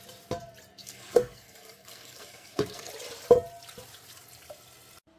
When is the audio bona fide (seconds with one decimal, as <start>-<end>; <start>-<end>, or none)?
0.0-0.8; 2.9-5.2